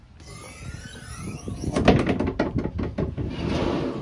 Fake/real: real